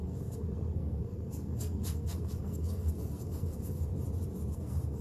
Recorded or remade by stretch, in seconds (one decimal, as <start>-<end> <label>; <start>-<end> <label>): 0.0-3.9 remade; 3.9-4.5 recorded; 4.5-5.0 remade